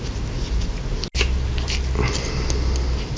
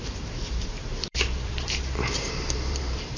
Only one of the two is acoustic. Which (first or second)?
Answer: first